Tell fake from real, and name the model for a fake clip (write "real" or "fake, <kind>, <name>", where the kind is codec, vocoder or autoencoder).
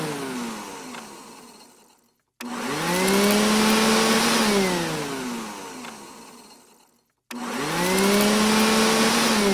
real